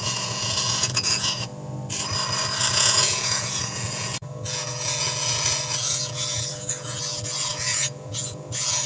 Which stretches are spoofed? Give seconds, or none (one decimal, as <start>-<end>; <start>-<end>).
0.0-1.5; 2.7-8.9